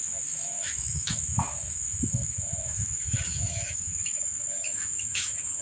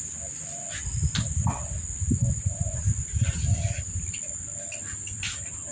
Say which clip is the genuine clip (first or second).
second